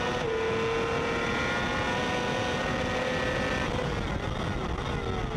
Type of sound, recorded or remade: recorded